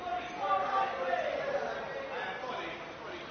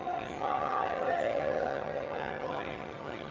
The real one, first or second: first